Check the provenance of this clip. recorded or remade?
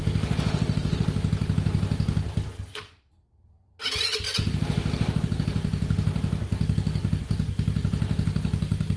recorded